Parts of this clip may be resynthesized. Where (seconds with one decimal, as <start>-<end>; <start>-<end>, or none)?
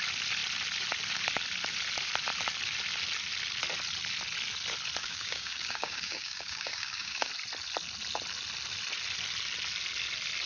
5.0-7.3